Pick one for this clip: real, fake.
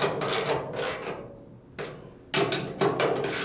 real